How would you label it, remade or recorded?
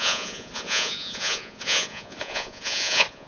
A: remade